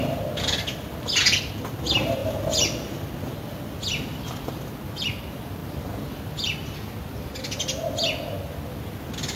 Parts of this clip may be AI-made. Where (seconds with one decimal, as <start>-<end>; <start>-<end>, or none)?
none

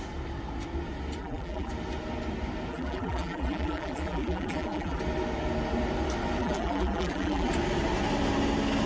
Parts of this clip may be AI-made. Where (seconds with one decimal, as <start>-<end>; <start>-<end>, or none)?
1.2-1.7; 2.7-5.0; 6.4-7.5

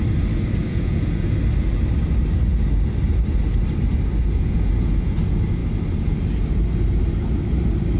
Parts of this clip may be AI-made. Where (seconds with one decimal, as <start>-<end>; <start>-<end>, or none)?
0.7-1.3; 4.2-5.1

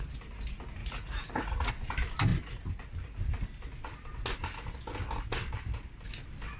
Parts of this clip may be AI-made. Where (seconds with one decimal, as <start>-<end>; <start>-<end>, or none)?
0.8-1.7

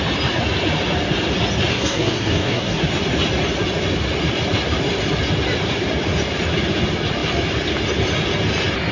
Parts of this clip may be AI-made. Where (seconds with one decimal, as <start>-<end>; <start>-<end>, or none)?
1.7-2.8

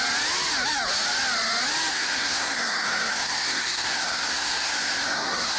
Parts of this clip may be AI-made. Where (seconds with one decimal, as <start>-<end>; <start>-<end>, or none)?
1.9-5.6